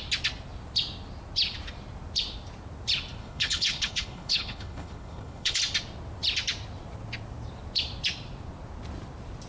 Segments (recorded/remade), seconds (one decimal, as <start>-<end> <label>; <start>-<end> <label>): 0.0-3.2 recorded; 3.2-5.6 remade; 5.6-9.5 recorded